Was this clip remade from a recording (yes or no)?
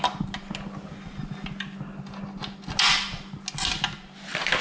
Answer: no